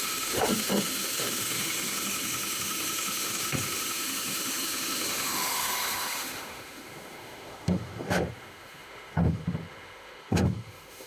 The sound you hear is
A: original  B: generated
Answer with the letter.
B